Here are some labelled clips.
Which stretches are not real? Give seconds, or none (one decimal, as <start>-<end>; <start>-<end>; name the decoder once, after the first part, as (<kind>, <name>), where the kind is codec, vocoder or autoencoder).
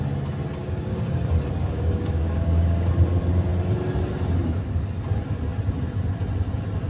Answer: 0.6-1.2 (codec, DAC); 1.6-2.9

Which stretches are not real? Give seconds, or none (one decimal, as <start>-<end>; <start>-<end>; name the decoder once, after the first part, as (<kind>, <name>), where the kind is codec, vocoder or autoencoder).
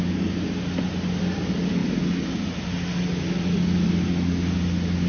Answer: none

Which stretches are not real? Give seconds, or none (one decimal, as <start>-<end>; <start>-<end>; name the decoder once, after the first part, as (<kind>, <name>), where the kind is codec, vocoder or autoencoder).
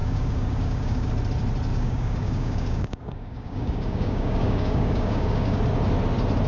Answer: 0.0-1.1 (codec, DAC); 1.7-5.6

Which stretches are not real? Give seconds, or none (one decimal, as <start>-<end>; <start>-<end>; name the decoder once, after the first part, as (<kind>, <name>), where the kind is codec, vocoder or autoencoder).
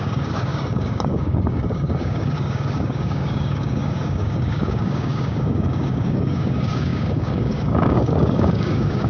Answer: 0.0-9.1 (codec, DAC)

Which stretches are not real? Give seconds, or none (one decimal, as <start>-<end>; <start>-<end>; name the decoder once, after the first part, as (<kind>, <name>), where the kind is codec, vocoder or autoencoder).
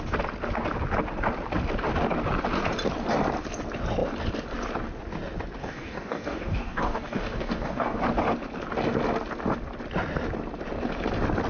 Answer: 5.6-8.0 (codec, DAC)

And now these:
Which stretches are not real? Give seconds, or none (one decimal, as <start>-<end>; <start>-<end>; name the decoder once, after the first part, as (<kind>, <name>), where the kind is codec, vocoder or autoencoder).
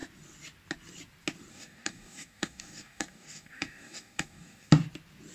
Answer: 1.5-4.7 (codec, DAC)